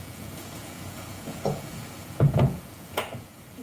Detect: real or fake fake